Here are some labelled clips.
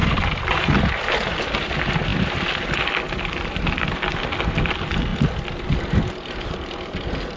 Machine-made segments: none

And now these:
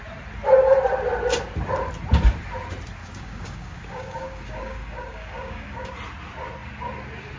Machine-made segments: 3.0-5.9 (codec, DAC)

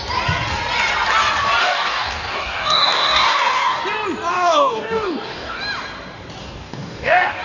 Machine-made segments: 1.6-3.8 (codec, DAC); 4.3-5.6; 6.4-7.4

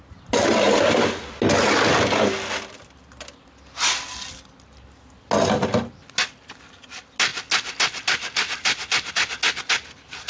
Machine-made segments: none

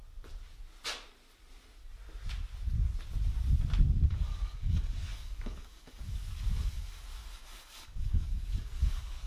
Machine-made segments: 4.1-9.3 (codec, DAC)

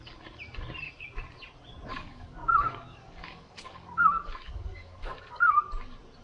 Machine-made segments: 1.9-5.6 (codec, DAC)